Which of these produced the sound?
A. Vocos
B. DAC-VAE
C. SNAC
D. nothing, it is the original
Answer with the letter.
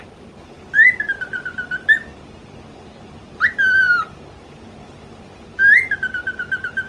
D